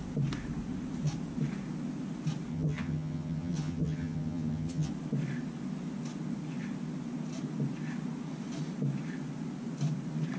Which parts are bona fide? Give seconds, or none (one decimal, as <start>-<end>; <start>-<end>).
0.0-2.5; 4.9-10.4

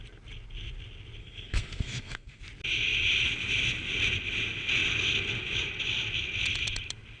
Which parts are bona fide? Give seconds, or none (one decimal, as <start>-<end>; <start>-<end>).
0.0-1.2; 2.4-7.2

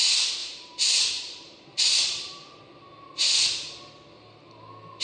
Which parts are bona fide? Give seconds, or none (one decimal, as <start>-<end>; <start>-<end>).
0.0-0.4; 2.6-5.0

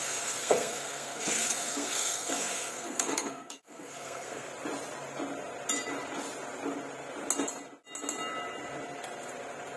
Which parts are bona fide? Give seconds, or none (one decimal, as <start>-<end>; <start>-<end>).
4.5-9.8